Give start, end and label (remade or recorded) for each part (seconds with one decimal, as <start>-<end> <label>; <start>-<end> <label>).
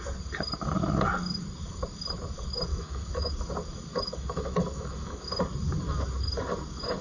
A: 0.0-2.7 recorded; 2.7-3.3 remade; 3.3-3.9 recorded; 3.9-5.2 remade; 5.2-7.0 recorded